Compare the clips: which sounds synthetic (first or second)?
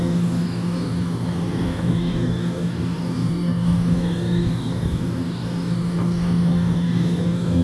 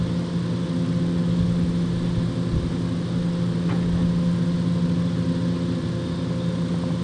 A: first